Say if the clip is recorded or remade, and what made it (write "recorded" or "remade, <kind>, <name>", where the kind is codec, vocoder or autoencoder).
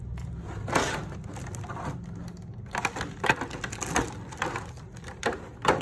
recorded